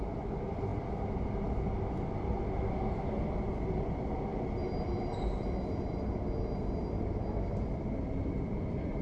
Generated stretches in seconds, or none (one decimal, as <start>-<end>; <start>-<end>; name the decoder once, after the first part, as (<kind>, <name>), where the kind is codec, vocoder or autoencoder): none

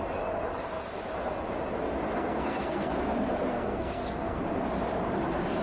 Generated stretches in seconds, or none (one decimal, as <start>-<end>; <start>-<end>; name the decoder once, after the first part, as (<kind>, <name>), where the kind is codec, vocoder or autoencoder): 2.1-2.9 (codec, SNAC); 3.5-4.4

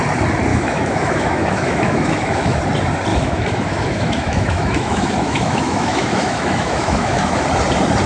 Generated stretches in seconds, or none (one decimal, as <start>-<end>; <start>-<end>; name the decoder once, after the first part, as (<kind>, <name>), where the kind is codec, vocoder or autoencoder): 0.5-2.6 (autoencoder, DAC-VAE); 3.1-7.4

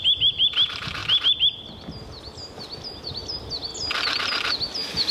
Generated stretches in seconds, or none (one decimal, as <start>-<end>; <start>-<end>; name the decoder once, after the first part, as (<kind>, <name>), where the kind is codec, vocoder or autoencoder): none